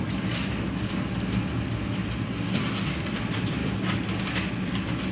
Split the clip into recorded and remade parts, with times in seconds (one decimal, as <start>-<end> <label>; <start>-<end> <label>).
0.0-5.1 recorded